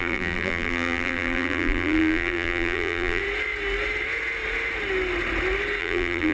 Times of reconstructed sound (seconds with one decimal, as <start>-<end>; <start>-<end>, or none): 0.0-3.2; 5.8-6.3